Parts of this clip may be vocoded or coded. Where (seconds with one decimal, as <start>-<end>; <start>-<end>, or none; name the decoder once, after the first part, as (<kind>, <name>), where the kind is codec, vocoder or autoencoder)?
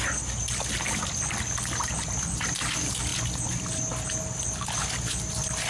none